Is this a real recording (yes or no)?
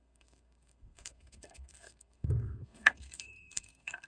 no